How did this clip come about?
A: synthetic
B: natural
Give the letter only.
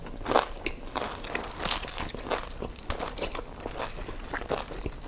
B